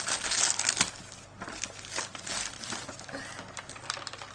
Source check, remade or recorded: recorded